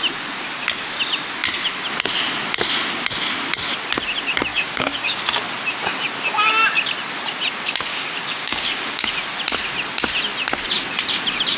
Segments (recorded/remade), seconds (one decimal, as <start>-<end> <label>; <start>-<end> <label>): 0.0-4.5 recorded; 4.5-5.2 remade; 5.2-7.9 recorded; 7.9-9.1 remade; 9.1-11.6 recorded